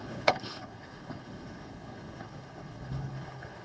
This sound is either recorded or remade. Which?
remade